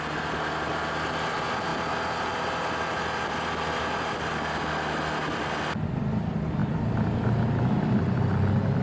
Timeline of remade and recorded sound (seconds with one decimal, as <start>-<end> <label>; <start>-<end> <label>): 0.0-8.8 recorded